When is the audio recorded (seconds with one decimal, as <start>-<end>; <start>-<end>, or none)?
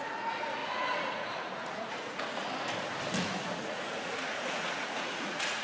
2.4-3.7